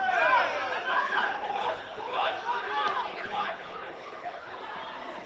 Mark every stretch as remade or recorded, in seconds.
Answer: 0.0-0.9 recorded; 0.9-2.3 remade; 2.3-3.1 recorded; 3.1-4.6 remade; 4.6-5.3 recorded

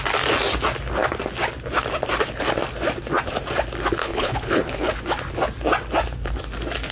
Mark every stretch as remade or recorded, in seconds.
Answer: 0.0-4.0 recorded; 4.0-4.9 remade; 4.9-6.9 recorded

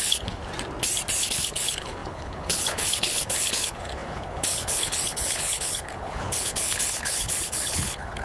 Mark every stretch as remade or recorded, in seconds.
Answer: 0.0-0.4 remade; 0.4-1.2 recorded; 1.2-8.2 remade

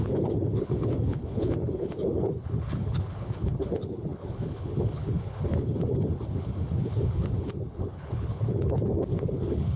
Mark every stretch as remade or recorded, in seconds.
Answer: 0.0-9.8 remade

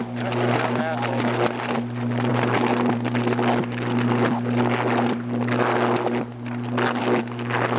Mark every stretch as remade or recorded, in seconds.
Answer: 0.0-7.8 recorded

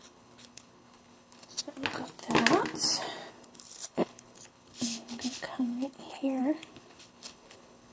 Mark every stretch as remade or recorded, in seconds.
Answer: 0.0-1.6 remade; 1.6-3.3 recorded; 3.3-7.9 remade